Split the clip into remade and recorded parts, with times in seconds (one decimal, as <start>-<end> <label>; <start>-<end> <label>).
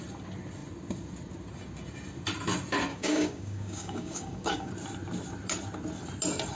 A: 0.0-2.9 recorded; 2.9-4.7 remade; 4.7-6.5 recorded